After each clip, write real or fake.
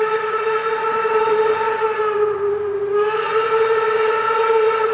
fake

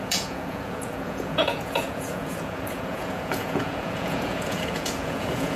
fake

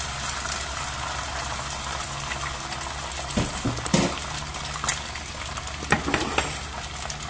real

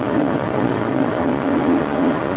fake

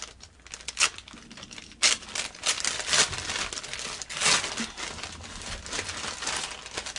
real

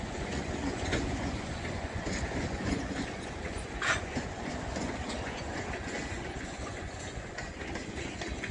fake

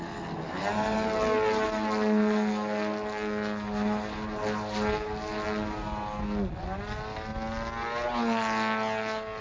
real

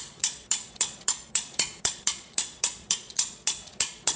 fake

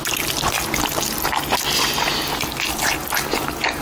real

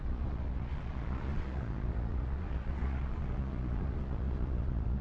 fake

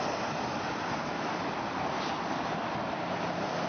real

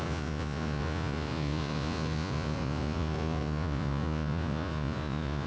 fake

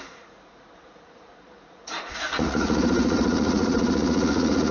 fake